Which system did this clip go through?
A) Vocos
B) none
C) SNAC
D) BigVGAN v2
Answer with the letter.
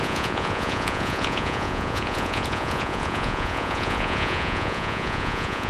A